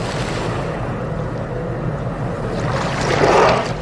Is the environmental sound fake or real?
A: real